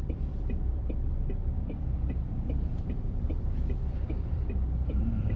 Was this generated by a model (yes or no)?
yes